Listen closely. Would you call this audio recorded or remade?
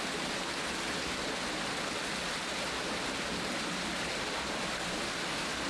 recorded